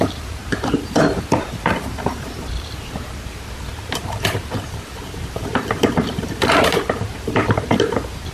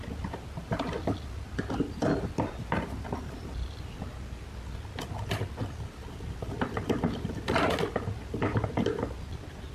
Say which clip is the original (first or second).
second